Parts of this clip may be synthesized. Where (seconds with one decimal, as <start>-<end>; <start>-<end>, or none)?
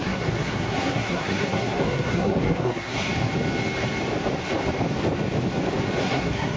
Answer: 0.0-3.1; 6.0-6.6